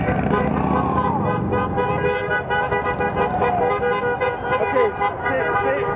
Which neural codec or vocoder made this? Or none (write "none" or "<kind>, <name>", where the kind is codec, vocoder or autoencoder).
none